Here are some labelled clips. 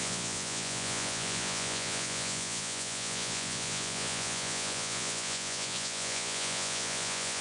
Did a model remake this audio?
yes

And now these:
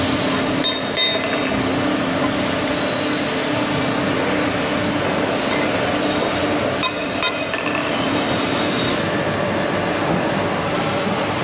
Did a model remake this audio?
no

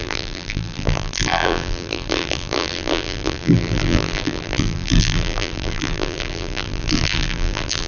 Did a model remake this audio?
yes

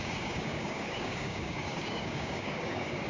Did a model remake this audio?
yes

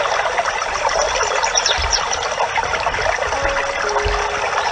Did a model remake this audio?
no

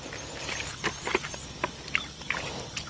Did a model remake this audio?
no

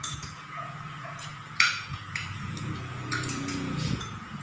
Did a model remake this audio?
yes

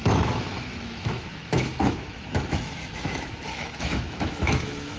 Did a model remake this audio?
yes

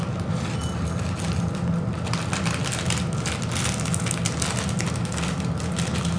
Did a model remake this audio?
no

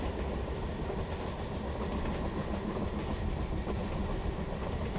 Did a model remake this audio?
no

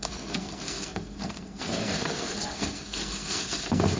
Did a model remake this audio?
yes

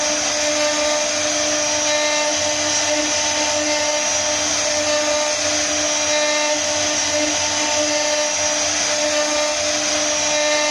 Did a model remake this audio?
no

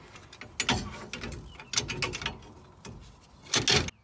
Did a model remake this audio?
no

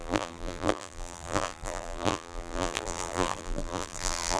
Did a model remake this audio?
yes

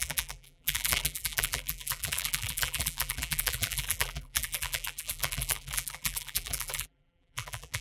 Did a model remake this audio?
yes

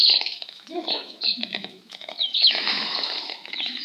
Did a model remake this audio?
yes